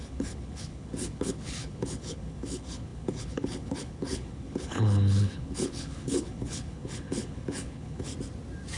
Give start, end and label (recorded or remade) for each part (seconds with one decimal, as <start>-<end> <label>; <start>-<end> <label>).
0.0-8.1 remade; 8.1-8.8 recorded

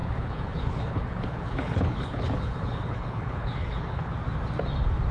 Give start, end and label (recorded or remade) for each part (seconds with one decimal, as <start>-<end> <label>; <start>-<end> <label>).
0.0-4.1 remade; 4.1-5.1 recorded

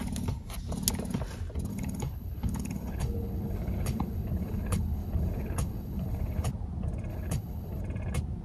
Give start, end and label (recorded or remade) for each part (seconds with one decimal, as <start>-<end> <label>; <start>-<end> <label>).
0.0-1.7 recorded; 1.7-6.5 remade; 6.5-7.1 recorded; 7.1-7.8 remade; 7.8-8.4 recorded

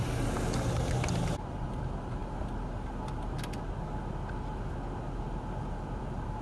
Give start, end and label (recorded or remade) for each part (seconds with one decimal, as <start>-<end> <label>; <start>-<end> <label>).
0.0-6.4 recorded

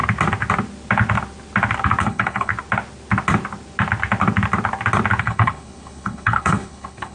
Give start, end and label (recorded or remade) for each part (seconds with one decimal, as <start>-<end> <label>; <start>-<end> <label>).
0.0-2.0 recorded; 2.0-2.5 remade; 2.5-5.2 recorded; 5.2-7.1 remade

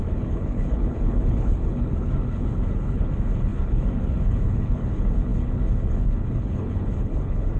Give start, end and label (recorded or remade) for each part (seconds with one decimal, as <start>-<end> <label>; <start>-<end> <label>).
0.0-7.6 remade

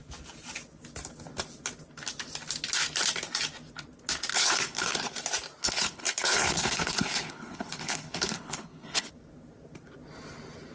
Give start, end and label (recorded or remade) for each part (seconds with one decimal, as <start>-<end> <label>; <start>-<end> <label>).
0.0-4.3 recorded; 4.3-5.1 remade; 5.1-5.6 recorded; 5.6-9.1 remade; 9.1-10.7 recorded

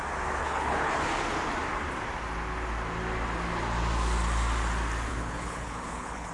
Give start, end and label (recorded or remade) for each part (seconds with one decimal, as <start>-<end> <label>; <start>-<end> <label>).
0.0-0.4 recorded; 0.4-0.9 remade; 0.9-5.1 recorded; 5.1-6.3 remade